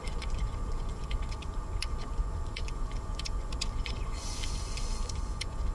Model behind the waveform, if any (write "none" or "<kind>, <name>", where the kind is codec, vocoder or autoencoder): vocoder, Vocos